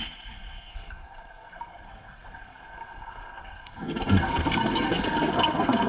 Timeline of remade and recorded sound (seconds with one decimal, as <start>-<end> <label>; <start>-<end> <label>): 0.0-5.9 remade